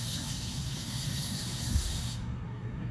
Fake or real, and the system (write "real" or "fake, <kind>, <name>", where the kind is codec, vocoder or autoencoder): fake, codec, SNAC